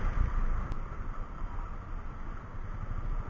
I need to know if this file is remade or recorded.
recorded